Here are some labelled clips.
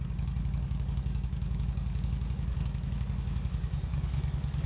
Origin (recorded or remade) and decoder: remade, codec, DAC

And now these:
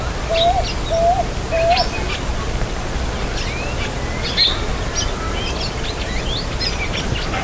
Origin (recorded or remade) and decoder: recorded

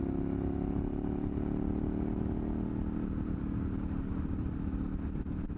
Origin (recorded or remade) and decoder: recorded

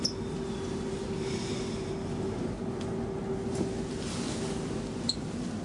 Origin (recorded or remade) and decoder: recorded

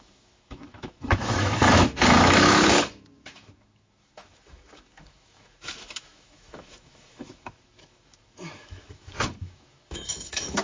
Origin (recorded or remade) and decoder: remade, autoencoder, DAC-VAE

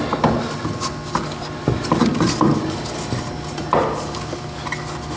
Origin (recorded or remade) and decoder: recorded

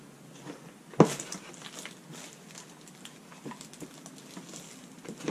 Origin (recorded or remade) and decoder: recorded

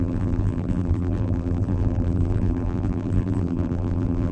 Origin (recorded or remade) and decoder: remade, vocoder, BigVGAN v2